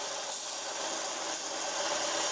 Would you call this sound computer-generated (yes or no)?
no